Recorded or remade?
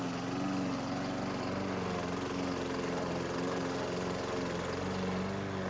recorded